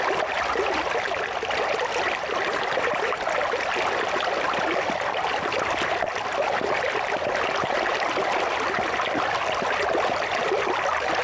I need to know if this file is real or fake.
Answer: real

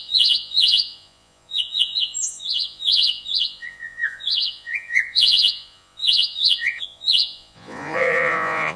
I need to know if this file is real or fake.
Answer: fake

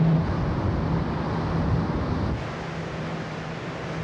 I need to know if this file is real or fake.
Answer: real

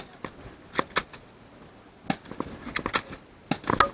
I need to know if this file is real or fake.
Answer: real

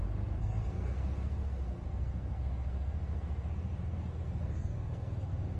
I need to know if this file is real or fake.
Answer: fake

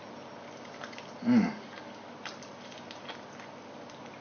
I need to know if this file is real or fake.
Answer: real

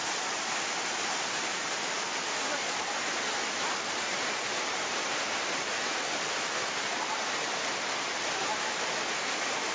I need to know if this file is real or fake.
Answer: fake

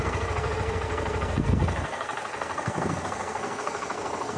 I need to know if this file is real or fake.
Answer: fake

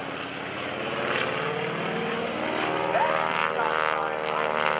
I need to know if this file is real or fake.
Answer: real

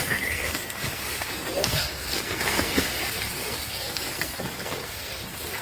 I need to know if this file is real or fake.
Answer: fake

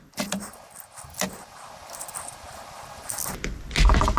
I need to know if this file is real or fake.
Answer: real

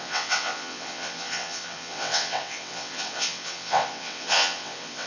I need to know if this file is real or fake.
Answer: fake